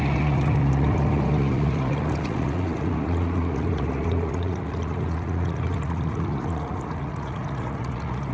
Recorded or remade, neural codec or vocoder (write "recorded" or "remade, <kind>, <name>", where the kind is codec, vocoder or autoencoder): remade, vocoder, Vocos